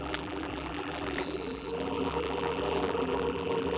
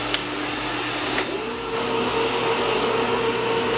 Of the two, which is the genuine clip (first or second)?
second